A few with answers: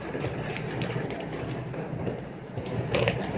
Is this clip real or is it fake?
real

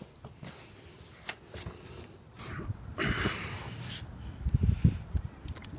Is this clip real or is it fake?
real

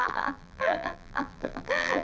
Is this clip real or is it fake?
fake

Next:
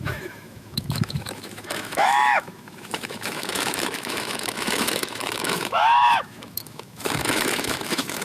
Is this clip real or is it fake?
fake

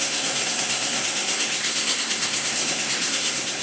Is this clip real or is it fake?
fake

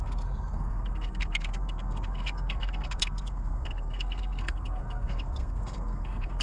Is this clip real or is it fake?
fake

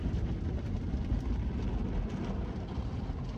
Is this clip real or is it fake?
real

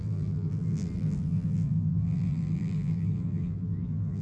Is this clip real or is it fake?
fake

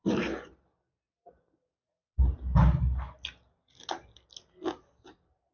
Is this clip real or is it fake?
real